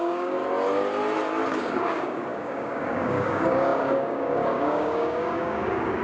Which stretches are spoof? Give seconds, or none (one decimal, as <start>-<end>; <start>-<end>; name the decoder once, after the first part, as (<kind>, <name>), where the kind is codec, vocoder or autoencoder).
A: 0.0-0.4 (codec, DAC); 1.5-6.0